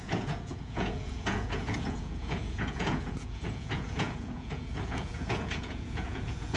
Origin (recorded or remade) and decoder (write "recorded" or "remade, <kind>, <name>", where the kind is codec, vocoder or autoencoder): remade, vocoder, Vocos